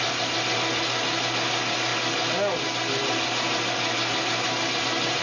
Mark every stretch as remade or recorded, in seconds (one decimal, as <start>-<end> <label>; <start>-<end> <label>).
0.0-5.2 recorded